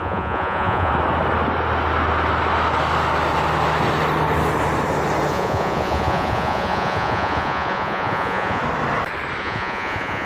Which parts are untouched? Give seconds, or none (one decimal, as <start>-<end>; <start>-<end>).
0.9-5.3; 8.6-9.4